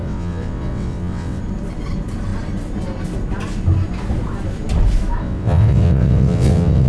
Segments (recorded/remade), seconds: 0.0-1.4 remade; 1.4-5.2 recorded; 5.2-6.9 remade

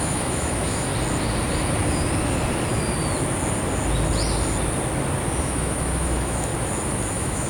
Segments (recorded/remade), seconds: 0.0-0.9 remade; 0.9-5.4 recorded; 5.4-6.5 remade; 6.5-7.1 recorded; 7.1-7.5 remade

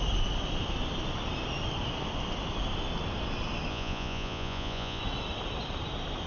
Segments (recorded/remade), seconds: 0.0-3.7 recorded; 3.7-5.0 remade; 5.0-6.3 recorded

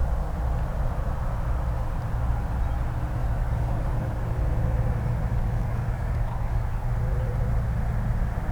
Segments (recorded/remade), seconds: 0.0-3.2 recorded; 3.2-4.3 remade; 4.3-5.3 recorded; 5.3-6.9 remade; 6.9-8.5 recorded

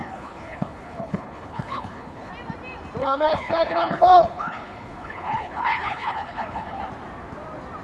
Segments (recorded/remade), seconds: 0.0-2.3 remade; 2.3-3.0 recorded; 3.0-6.8 remade; 6.8-7.8 recorded